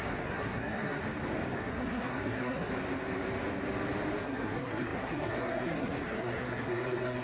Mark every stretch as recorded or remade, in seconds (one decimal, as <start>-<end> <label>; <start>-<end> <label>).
0.0-1.0 remade; 1.0-1.6 recorded; 1.6-2.7 remade; 2.7-4.2 recorded; 4.2-7.2 remade